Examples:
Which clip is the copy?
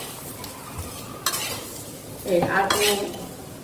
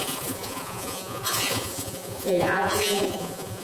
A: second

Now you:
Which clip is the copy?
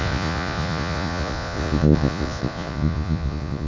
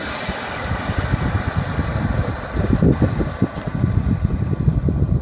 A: first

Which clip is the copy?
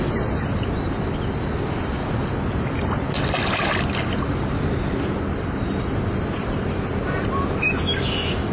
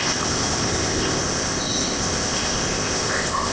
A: second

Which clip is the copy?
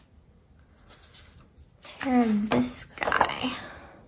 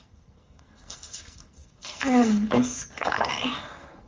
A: second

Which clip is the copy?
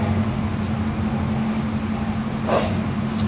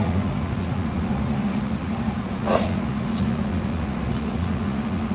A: second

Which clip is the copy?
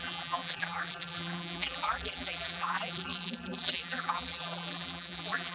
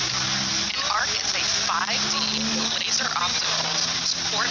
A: first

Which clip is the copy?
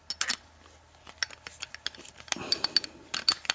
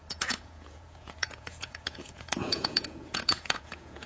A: second